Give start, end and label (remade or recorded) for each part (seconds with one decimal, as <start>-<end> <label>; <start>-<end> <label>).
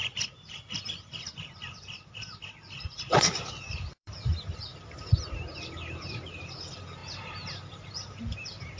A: 0.0-7.0 remade; 7.0-7.8 recorded; 7.8-8.8 remade